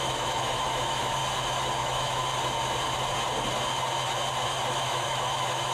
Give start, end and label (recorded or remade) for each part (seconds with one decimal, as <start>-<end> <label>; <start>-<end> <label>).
0.0-1.2 remade; 1.2-1.8 recorded; 1.8-2.2 remade; 2.2-4.7 recorded; 4.7-5.7 remade

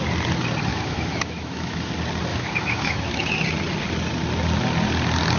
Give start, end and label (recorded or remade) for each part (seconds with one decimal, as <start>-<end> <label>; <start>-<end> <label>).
0.0-0.7 recorded; 0.7-1.9 remade; 1.9-2.3 recorded; 2.3-3.3 remade; 3.3-5.4 recorded

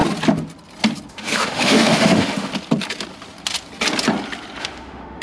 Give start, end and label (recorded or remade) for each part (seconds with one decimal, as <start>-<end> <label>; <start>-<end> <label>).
0.0-1.1 recorded; 1.1-2.5 remade; 2.5-4.6 recorded; 4.6-5.2 remade

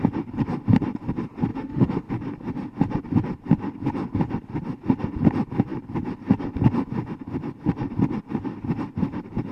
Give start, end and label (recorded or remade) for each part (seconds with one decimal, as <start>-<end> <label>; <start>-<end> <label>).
0.0-1.5 recorded; 1.5-2.1 remade; 2.1-9.5 recorded

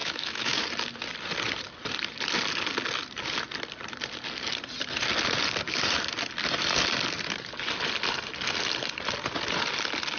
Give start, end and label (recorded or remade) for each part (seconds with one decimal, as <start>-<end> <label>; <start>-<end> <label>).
0.0-0.6 remade; 0.6-10.2 recorded